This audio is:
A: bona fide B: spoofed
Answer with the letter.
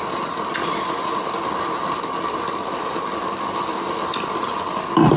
A